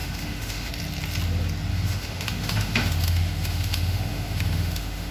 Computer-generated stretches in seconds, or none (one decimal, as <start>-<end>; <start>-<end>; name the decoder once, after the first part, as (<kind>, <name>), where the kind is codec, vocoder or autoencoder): 0.0-0.7 (autoencoder, DAC-VAE); 1.7-5.1